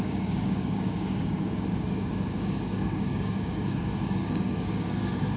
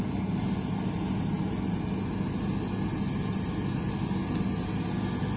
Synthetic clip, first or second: first